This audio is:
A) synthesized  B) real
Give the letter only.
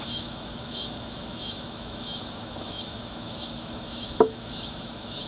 A